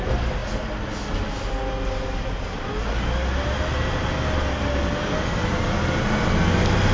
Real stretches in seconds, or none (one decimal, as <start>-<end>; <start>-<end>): 0.0-6.9